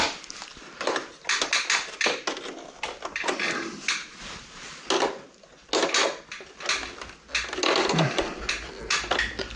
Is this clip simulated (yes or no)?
no